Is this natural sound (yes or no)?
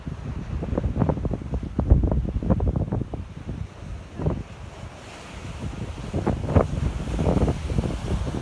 yes